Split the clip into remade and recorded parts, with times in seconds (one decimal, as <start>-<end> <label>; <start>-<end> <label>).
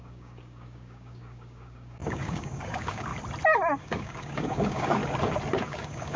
0.0-3.1 remade; 3.1-3.8 recorded; 3.8-5.0 remade; 5.0-5.6 recorded; 5.6-6.2 remade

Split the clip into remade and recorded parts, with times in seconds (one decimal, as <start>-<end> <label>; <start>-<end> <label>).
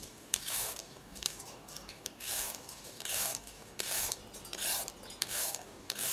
0.0-4.2 remade; 4.2-5.2 recorded; 5.2-6.1 remade